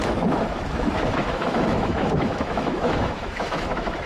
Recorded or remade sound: remade